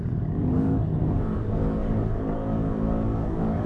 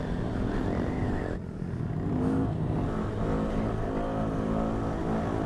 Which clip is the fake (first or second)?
first